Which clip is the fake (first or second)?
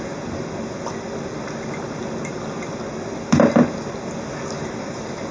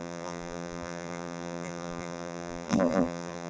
second